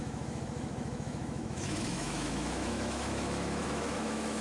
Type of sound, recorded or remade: remade